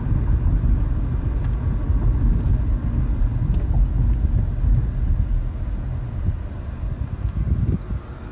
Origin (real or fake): real